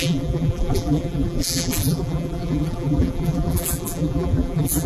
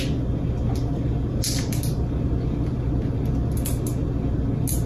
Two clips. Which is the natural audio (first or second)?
second